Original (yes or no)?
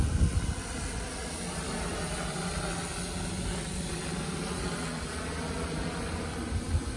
yes